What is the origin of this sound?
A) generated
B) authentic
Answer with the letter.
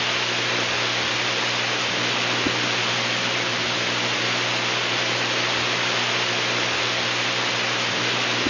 B